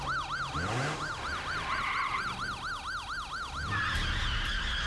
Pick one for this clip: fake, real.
real